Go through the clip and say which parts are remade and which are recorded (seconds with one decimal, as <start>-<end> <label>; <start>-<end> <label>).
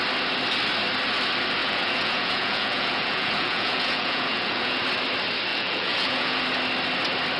0.0-1.6 recorded; 1.6-4.8 remade; 4.8-5.5 recorded; 5.5-6.4 remade; 6.4-7.4 recorded